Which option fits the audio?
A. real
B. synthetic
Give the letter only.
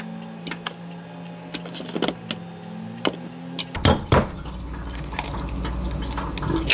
A